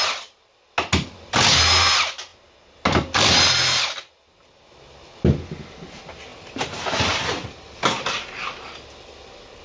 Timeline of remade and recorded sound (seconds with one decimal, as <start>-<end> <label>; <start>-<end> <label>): 0.0-9.6 recorded